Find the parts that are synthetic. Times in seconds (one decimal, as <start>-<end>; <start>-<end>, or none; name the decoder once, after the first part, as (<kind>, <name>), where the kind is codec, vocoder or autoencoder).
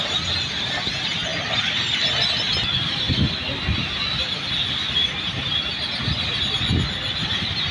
none